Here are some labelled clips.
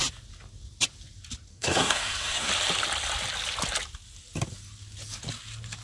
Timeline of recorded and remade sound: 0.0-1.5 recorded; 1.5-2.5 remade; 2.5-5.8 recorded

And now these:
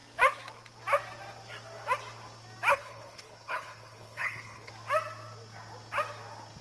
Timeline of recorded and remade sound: 0.0-2.7 recorded; 2.7-4.7 remade; 4.7-6.6 recorded

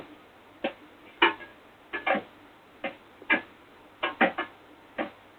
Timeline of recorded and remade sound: 0.0-5.4 recorded

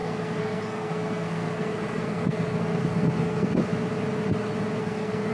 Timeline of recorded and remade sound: 0.0-3.7 remade; 3.7-4.8 recorded; 4.8-5.3 remade

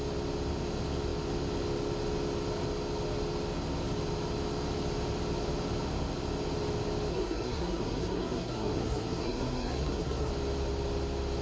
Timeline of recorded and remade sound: 0.0-7.1 recorded; 7.1-10.3 remade; 10.3-11.4 recorded

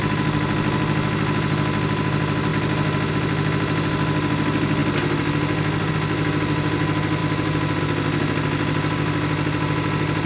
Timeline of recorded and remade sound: 0.0-10.3 recorded